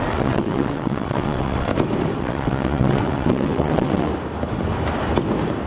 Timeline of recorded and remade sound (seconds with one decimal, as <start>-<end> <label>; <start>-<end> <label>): 0.0-1.7 remade; 1.7-2.2 recorded; 2.2-4.1 remade; 4.1-5.7 recorded